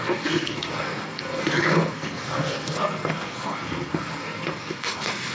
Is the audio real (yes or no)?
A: no